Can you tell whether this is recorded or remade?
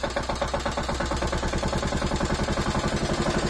recorded